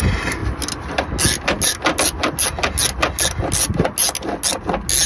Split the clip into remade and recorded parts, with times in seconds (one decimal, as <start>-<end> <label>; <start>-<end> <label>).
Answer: 0.0-5.1 recorded